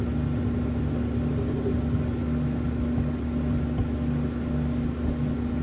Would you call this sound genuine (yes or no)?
yes